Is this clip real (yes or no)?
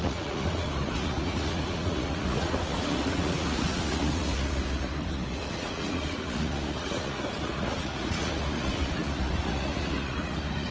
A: no